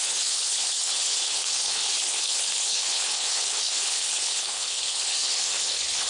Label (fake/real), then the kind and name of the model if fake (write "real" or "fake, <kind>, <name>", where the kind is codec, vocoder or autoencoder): fake, codec, HILCodec